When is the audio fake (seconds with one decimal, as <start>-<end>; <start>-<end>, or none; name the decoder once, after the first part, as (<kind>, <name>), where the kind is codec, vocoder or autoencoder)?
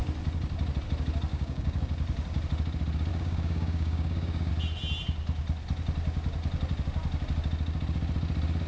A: 1.3-1.8 (codec, DAC); 3.1-4.5